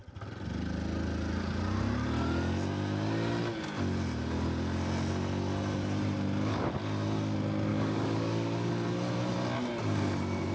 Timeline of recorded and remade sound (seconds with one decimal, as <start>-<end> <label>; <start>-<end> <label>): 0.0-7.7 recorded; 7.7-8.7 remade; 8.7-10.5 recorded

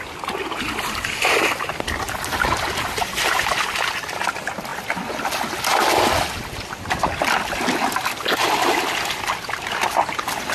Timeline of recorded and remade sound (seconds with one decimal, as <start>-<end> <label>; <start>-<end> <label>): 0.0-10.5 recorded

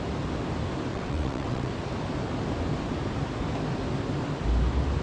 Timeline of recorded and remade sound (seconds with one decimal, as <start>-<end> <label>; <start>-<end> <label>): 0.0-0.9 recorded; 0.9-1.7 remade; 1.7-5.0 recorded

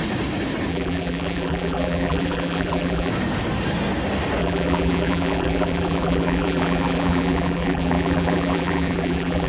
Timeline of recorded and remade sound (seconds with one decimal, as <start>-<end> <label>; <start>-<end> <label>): 0.0-0.7 recorded; 0.7-3.1 remade; 3.1-4.4 recorded; 4.4-9.5 remade

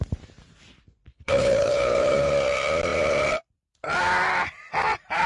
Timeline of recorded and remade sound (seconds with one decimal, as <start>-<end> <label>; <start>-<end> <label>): 0.0-1.1 recorded; 1.1-2.3 remade; 2.3-5.3 recorded